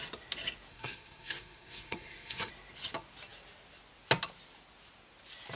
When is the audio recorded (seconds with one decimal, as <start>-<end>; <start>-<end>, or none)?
0.0-0.7; 2.5-5.6